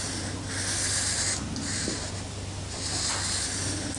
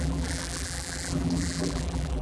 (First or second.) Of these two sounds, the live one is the first